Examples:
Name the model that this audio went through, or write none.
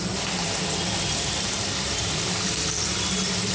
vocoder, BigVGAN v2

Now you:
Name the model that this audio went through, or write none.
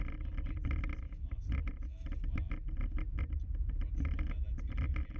none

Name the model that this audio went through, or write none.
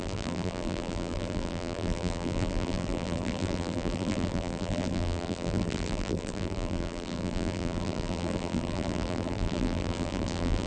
vocoder, BigVGAN v2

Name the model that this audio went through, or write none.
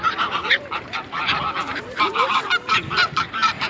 vocoder, BigVGAN v2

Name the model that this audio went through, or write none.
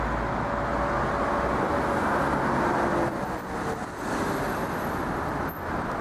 none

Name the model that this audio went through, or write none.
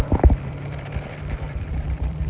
vocoder, BigVGAN v2